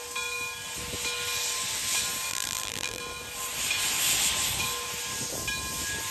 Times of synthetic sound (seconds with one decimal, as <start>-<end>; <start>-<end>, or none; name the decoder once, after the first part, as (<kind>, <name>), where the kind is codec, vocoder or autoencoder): 2.3-3.0 (vocoder, BigVGAN v2)